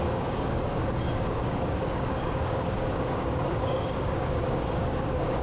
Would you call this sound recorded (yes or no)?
no